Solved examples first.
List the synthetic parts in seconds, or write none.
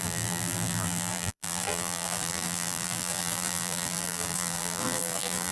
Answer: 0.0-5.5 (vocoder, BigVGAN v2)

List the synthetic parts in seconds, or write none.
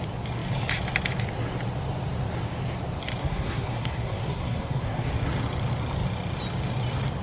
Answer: 3.2-5.1 (codec, SNAC)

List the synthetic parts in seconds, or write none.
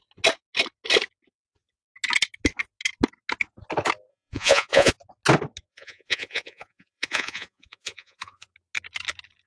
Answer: 4.1-4.9 (vocoder, Vocos); 5.7-8.5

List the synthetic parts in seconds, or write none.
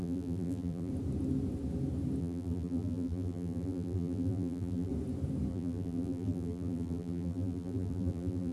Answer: 0.0-0.9 (vocoder, BigVGAN v2); 2.2-4.9; 5.5-8.5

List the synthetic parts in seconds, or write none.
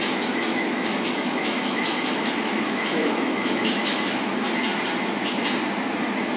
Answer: 0.5-4.3 (autoencoder, DAC-VAE)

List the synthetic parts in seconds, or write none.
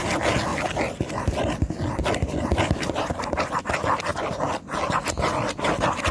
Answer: 0.5-3.6 (vocoder, BigVGAN v2); 4.1-5.0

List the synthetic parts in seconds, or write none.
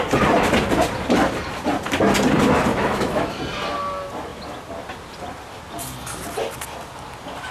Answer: 2.7-3.4 (autoencoder, DAC-VAE)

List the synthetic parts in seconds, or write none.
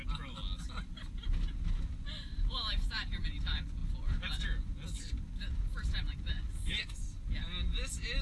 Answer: none